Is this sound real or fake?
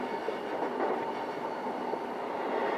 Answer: real